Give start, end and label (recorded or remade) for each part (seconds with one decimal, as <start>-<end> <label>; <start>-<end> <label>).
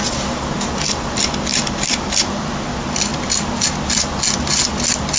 0.0-1.5 recorded; 1.5-2.4 remade; 2.4-3.1 recorded; 3.1-3.7 remade; 3.7-5.2 recorded